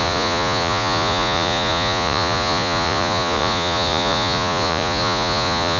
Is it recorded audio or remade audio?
remade